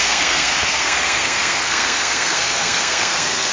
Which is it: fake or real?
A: fake